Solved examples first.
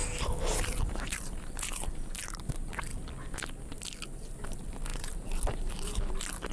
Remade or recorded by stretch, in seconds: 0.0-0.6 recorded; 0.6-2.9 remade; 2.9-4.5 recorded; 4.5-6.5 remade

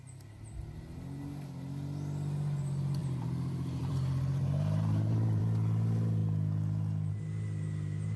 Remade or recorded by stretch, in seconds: 0.0-3.0 recorded; 3.0-5.4 remade; 5.4-8.2 recorded

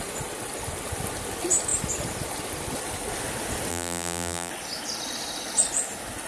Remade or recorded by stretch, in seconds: 0.0-3.7 recorded; 3.7-4.5 remade; 4.5-6.3 recorded